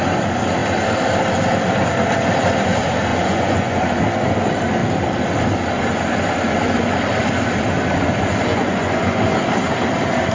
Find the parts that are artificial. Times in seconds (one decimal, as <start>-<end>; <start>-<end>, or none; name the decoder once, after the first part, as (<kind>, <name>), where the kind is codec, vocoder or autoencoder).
3.1-3.8 (vocoder, Vocos); 8.5-9.2

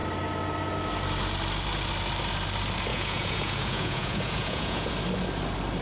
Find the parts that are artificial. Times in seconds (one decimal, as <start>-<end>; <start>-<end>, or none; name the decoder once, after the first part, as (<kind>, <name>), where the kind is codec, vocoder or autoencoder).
2.9-4.9 (vocoder, Vocos)

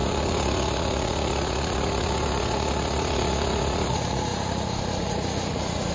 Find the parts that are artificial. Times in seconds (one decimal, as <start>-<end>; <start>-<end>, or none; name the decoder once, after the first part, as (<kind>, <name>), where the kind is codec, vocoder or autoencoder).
0.0-5.9 (vocoder, Vocos)

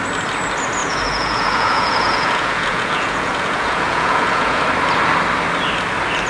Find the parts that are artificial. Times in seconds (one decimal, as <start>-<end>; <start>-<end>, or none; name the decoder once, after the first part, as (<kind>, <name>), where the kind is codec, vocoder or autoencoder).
0.8-4.6 (vocoder, Vocos)

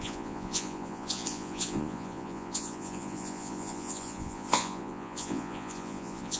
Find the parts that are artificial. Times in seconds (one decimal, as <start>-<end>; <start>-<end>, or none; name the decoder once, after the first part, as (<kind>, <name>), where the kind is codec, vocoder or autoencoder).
0.0-6.4 (vocoder, Vocos)

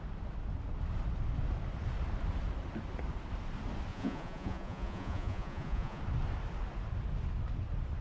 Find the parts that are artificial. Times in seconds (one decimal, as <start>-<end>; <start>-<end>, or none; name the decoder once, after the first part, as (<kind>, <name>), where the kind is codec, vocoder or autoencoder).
3.9-6.0 (vocoder, Vocos)

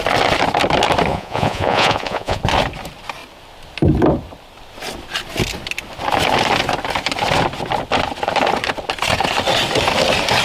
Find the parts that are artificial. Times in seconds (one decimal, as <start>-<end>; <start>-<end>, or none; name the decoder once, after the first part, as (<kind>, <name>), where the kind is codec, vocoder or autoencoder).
1.1-2.4 (vocoder, Vocos)